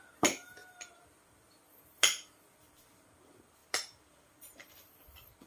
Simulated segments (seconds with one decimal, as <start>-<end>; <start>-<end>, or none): none